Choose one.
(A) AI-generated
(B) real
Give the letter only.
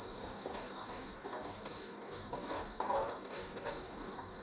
A